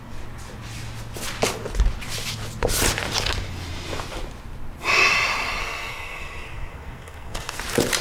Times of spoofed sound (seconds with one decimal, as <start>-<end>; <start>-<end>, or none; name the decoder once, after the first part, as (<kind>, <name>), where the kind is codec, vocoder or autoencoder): 5.6-7.6 (codec, SNAC)